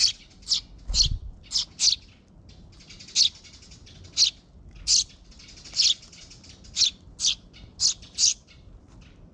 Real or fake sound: real